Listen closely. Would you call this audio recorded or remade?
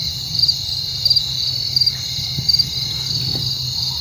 recorded